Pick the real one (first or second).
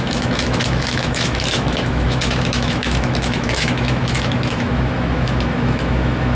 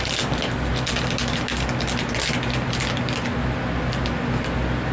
second